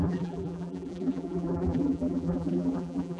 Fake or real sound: fake